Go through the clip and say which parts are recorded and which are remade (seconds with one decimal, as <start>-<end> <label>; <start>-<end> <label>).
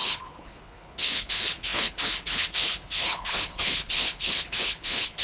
0.0-5.2 remade